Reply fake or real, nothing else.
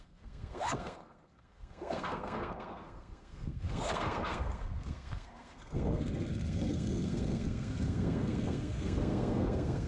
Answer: fake